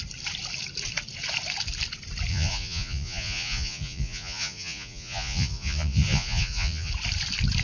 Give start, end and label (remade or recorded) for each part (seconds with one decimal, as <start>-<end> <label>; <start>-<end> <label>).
0.0-2.3 recorded; 2.3-6.9 remade; 6.9-7.6 recorded